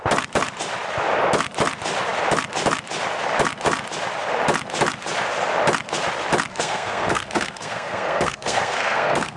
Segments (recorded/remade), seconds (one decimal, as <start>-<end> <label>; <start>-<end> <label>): 0.0-6.5 recorded; 6.5-9.4 remade